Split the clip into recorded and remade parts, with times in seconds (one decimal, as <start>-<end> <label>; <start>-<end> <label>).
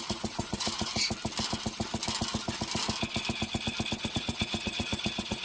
0.0-0.9 remade; 0.9-4.1 recorded; 4.1-5.4 remade